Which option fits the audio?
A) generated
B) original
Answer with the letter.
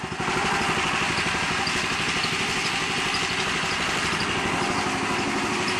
B